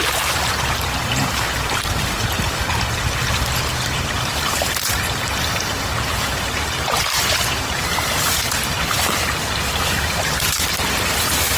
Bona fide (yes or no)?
no